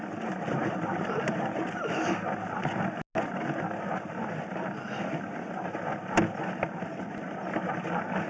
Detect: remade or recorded recorded